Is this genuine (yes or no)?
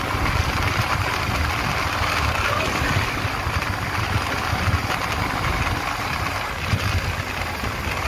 yes